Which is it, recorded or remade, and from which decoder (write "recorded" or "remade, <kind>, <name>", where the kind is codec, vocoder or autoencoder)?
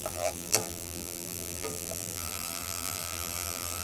remade, vocoder, BigVGAN v2